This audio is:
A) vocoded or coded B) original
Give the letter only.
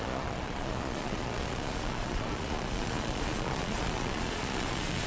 A